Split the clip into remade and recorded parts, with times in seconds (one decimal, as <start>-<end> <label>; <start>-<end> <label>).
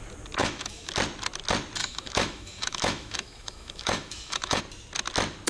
0.0-0.4 recorded; 0.4-0.9 remade; 0.9-1.8 recorded; 1.8-4.6 remade; 4.6-5.5 recorded